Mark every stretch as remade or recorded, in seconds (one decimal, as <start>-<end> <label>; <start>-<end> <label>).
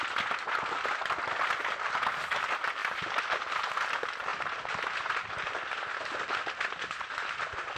0.0-2.8 recorded; 2.8-3.6 remade; 3.6-7.8 recorded